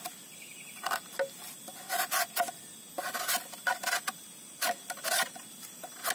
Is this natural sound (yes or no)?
yes